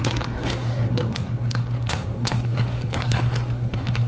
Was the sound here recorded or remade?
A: remade